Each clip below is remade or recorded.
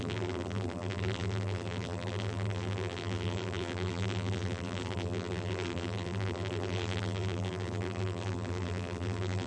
remade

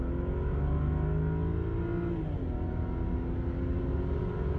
recorded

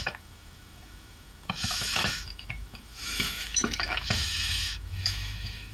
remade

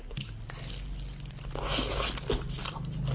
recorded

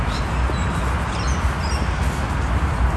recorded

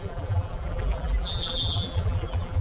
remade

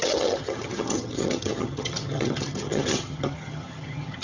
remade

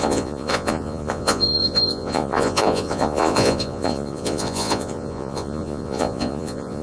remade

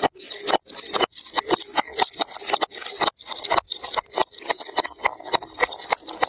recorded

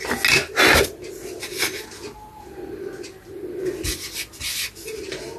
recorded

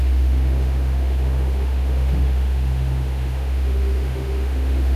remade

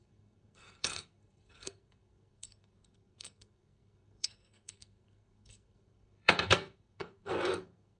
remade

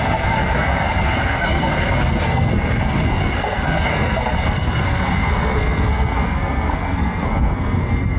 remade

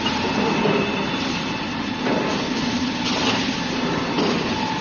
recorded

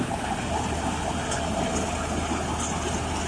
recorded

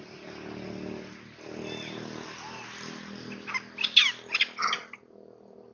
recorded